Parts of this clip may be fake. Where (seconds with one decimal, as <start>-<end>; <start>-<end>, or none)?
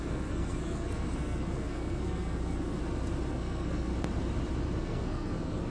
0.0-2.8; 3.3-3.9; 4.8-5.7